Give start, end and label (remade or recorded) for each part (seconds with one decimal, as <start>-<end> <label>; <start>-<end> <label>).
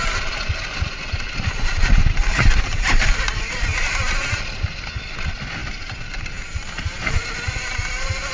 0.0-8.3 recorded